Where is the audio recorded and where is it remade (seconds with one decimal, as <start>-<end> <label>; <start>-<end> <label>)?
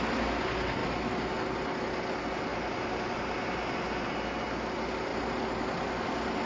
0.0-6.5 recorded